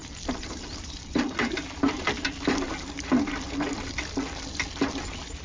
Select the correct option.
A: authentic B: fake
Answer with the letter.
A